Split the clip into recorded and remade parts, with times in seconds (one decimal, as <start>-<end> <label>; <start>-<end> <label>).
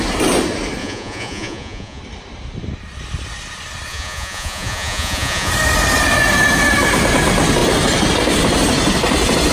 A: 0.0-0.8 recorded; 0.8-2.0 remade; 2.0-3.9 recorded; 3.9-5.5 remade; 5.5-9.5 recorded